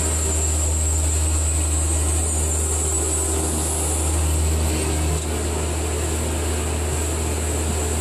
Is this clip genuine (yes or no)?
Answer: yes